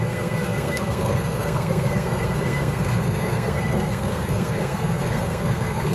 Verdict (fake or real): fake